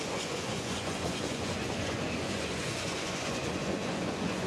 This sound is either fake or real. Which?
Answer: fake